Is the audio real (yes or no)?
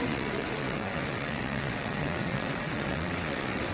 no